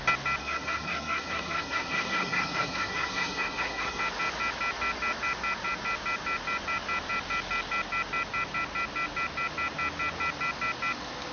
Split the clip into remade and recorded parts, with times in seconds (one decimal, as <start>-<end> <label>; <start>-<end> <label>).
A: 0.0-0.4 recorded; 0.4-4.0 remade; 4.0-11.3 recorded